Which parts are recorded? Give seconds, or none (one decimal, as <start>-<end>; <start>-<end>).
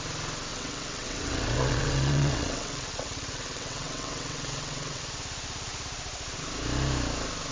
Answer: 0.0-0.5; 5.0-7.5